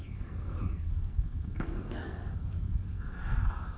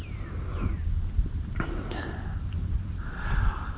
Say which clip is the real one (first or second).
second